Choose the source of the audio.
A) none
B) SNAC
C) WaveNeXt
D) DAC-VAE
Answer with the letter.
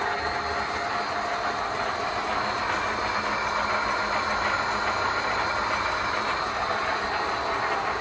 A